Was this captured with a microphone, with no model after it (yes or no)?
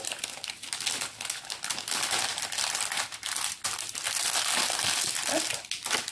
yes